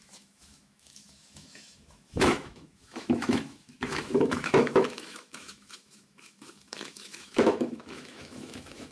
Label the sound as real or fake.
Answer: fake